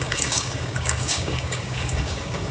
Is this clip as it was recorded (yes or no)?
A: no